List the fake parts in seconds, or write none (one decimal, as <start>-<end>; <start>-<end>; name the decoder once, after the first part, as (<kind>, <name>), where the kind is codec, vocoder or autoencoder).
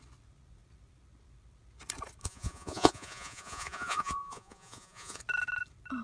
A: 2.2-5.2 (vocoder, Vocos)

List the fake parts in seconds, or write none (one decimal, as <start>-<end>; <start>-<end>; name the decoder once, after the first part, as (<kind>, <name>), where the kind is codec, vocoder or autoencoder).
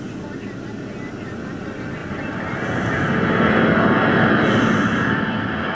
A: 2.0-5.7 (vocoder, BigVGAN v2)